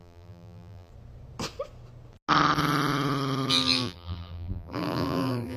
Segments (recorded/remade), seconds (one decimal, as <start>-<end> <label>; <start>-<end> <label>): 0.0-0.9 remade; 0.9-3.5 recorded; 3.5-5.6 remade